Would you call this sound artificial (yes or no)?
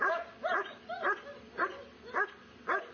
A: no